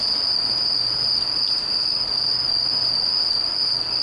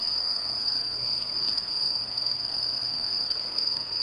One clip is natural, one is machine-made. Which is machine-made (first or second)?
second